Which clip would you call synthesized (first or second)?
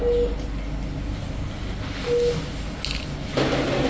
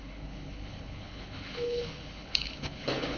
second